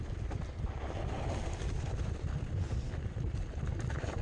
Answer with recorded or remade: recorded